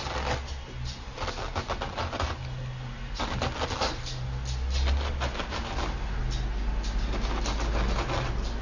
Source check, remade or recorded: recorded